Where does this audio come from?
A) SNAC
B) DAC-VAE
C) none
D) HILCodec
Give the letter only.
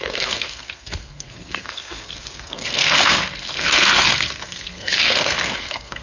A